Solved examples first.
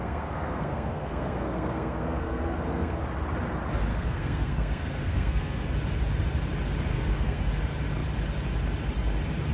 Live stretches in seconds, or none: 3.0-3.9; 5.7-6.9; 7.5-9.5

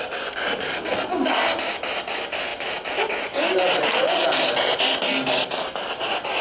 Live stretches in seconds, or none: 0.0-6.4

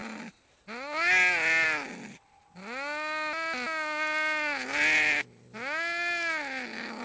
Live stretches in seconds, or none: 0.0-7.0

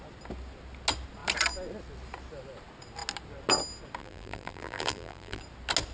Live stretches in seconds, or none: 0.0-4.0; 5.4-5.9